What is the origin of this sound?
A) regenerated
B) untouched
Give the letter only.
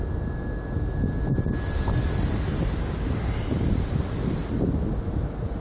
B